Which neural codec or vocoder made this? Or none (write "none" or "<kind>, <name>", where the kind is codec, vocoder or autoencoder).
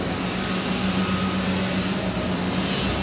none